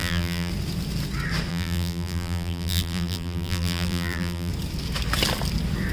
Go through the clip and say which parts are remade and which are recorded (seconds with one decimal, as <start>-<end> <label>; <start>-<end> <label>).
0.0-0.5 remade; 0.5-1.5 recorded; 1.5-4.5 remade; 4.5-5.9 recorded

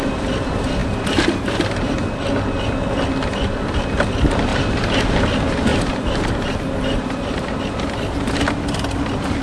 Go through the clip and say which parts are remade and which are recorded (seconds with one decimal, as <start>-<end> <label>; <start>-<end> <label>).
0.0-0.8 recorded; 0.8-2.1 remade; 2.1-4.5 recorded; 4.5-5.2 remade; 5.2-5.7 recorded; 5.7-7.6 remade; 7.6-9.4 recorded